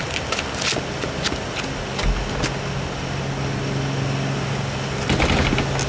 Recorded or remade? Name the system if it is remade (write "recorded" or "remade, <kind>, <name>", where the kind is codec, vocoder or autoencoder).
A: recorded